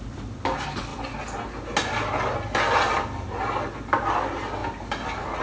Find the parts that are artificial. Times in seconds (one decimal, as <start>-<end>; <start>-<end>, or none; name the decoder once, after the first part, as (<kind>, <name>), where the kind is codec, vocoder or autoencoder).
none